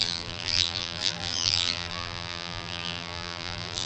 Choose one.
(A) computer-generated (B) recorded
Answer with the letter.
A